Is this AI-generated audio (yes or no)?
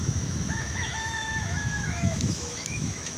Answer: yes